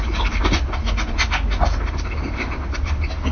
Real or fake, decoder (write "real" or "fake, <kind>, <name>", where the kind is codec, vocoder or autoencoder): real